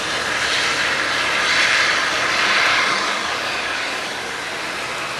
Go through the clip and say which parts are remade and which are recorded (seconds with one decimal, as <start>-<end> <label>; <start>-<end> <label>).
0.0-2.7 recorded; 2.7-4.4 remade; 4.4-5.2 recorded